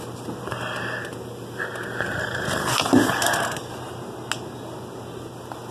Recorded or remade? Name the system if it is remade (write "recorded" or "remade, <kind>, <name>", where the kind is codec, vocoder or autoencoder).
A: recorded